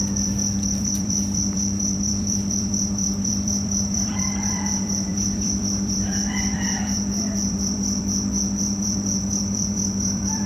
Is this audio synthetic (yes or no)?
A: yes